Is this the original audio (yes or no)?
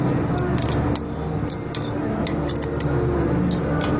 yes